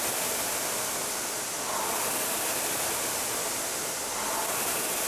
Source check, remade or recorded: recorded